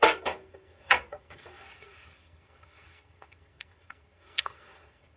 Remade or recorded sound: remade